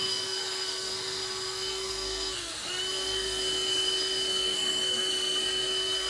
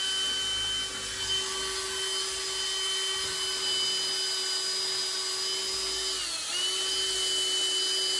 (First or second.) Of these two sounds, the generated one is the first